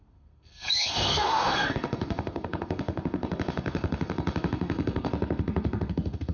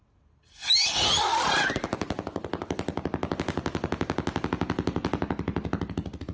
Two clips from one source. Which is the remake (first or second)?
first